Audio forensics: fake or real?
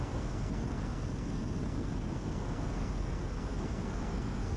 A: fake